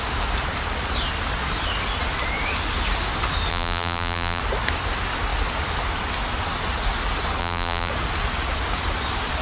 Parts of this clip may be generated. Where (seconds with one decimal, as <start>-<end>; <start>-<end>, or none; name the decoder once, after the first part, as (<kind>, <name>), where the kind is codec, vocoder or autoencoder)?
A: 3.5-4.4 (vocoder, BigVGAN v2); 7.4-7.9